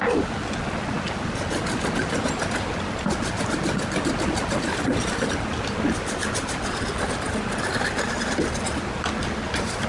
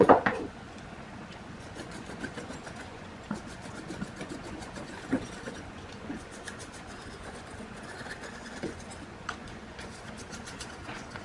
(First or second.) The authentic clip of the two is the first